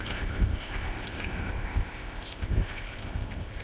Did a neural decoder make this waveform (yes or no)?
yes